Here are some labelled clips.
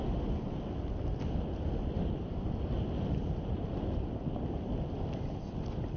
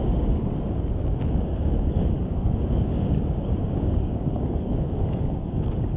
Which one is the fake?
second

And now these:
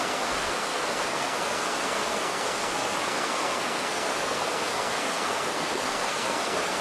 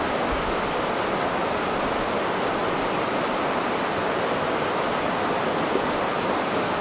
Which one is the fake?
first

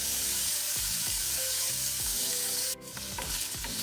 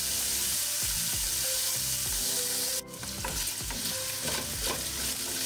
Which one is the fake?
first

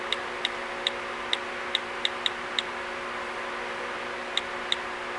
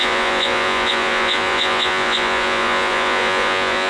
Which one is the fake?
second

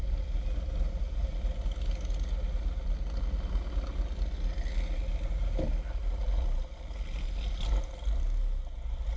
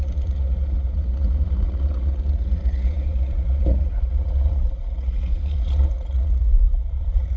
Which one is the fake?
second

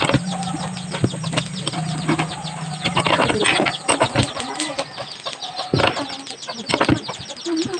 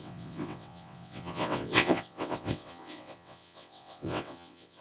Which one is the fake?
second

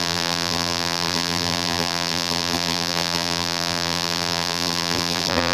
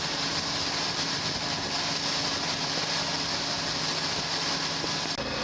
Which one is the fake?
first